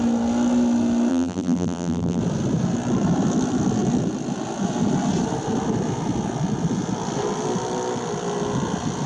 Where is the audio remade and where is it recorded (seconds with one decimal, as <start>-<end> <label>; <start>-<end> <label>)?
0.0-1.1 recorded; 1.1-2.2 remade; 2.2-9.1 recorded